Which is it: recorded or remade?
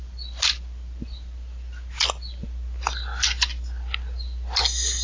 recorded